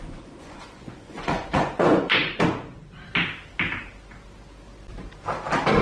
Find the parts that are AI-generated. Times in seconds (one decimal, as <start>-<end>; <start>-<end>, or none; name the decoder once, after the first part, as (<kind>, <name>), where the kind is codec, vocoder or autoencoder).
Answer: 0.0-2.2 (vocoder, Vocos)